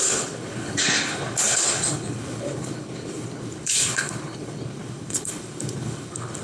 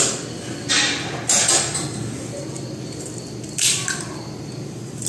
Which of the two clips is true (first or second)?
second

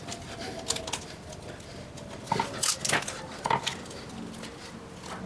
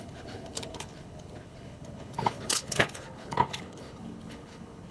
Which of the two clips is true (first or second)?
first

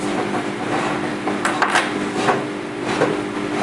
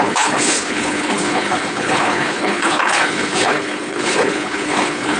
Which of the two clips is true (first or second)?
first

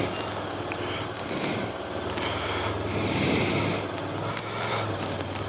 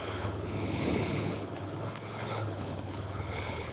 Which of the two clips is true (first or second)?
first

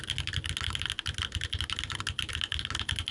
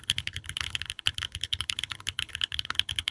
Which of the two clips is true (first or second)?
first